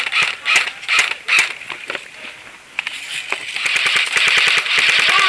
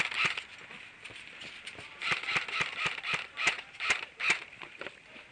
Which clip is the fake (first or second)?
second